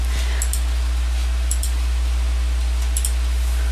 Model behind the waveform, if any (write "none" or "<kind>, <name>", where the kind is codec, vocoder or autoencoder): none